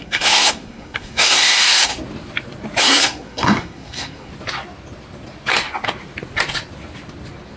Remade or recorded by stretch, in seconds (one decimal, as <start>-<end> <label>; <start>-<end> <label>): 0.0-1.9 remade; 1.9-2.8 recorded; 2.8-4.3 remade; 4.3-7.6 recorded